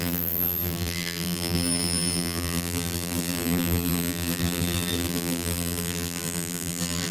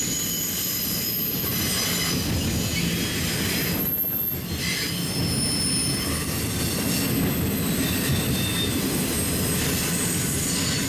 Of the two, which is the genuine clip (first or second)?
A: second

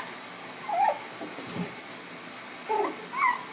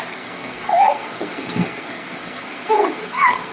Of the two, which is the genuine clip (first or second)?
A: first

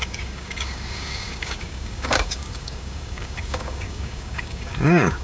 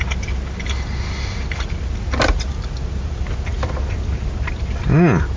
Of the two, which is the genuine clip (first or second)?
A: second